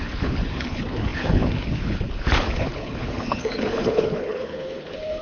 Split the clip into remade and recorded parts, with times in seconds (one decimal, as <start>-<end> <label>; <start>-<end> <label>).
0.0-5.2 remade